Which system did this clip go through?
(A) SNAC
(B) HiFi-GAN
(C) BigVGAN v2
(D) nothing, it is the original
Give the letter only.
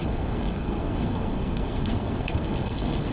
A